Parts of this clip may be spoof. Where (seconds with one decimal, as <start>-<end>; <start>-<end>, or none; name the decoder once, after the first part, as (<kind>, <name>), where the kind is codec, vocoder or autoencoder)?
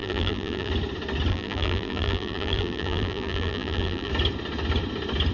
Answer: 0.0-0.7 (vocoder, BigVGAN v2); 1.3-4.1